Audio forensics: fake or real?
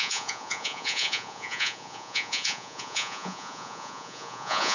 fake